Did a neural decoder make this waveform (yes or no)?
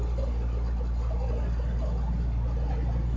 no